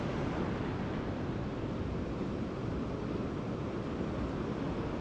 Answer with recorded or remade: recorded